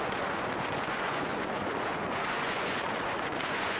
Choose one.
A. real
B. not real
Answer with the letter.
B